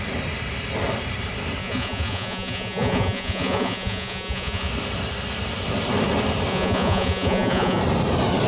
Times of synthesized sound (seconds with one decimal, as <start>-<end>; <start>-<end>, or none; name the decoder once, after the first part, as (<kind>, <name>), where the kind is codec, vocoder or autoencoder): 1.6-4.7 (vocoder, Vocos); 6.5-7.8